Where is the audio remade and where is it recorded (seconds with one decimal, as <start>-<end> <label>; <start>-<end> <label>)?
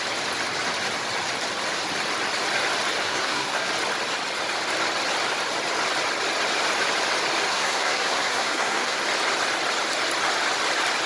0.0-3.0 recorded; 3.0-3.7 remade; 3.7-7.5 recorded; 7.5-9.0 remade; 9.0-11.1 recorded